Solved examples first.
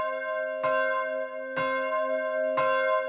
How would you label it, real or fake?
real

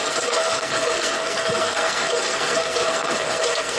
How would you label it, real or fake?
fake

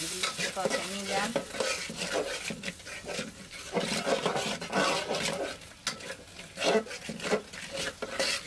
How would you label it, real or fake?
real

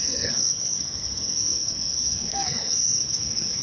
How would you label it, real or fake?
fake